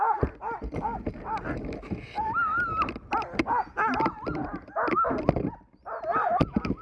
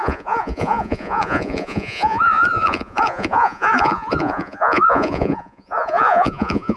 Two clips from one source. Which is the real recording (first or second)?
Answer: first